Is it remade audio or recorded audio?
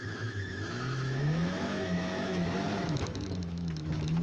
remade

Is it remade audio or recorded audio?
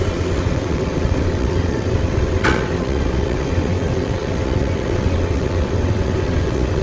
remade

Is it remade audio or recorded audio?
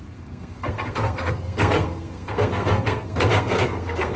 remade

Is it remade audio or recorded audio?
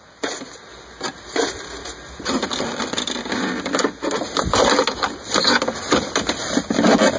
recorded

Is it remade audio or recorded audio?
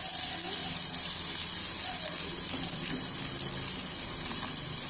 recorded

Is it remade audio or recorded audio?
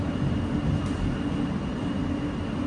recorded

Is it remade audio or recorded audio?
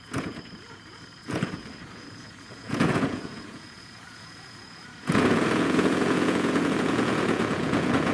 remade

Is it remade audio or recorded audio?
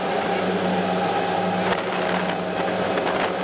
recorded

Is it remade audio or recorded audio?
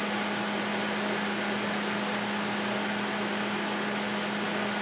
recorded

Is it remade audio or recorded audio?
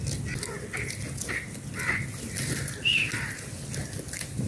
recorded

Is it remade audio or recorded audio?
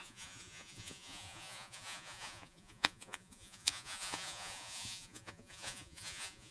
remade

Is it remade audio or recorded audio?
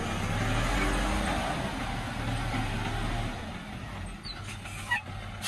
recorded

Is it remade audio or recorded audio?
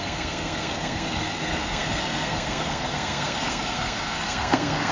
remade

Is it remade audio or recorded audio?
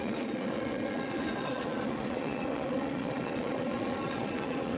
remade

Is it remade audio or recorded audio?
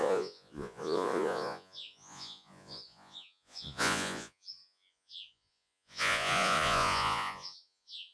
remade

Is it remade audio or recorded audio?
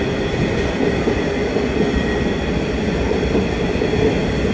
recorded